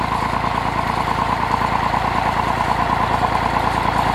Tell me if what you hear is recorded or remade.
recorded